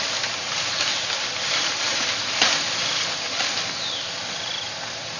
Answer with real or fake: real